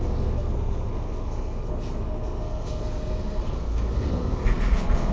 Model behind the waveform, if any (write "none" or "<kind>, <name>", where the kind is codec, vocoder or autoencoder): codec, SNAC